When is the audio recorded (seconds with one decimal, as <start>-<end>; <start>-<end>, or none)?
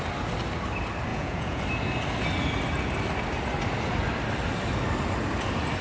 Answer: 0.0-1.1; 1.6-5.8